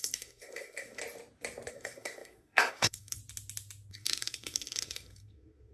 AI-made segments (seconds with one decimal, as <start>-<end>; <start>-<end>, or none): 0.0-1.0; 1.7-3.2; 3.9-5.7